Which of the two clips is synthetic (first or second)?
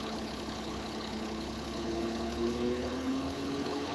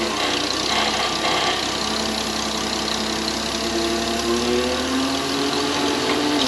first